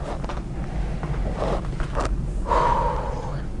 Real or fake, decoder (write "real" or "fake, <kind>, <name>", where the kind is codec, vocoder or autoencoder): real